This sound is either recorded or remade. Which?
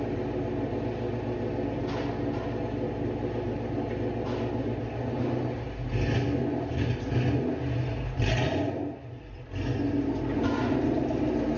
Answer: recorded